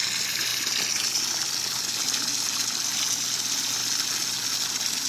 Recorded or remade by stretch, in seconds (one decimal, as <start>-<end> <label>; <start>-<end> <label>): 0.0-5.1 recorded